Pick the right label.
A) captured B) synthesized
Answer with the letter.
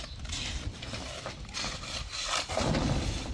A